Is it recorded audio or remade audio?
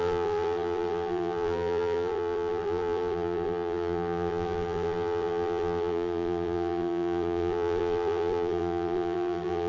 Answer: remade